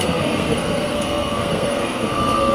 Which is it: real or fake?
fake